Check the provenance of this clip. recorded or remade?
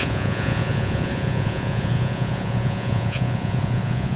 remade